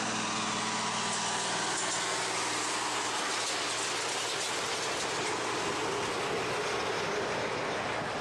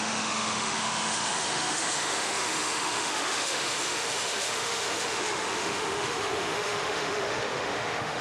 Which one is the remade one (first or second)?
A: second